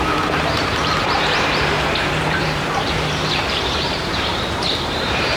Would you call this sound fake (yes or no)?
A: yes